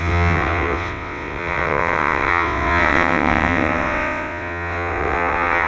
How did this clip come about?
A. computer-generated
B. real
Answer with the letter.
A